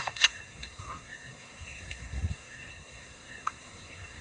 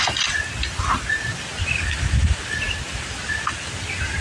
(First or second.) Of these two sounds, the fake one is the first